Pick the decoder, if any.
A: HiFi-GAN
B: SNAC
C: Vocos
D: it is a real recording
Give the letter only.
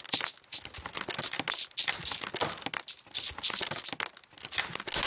D